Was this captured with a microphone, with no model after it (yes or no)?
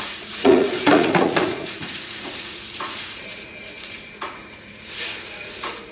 no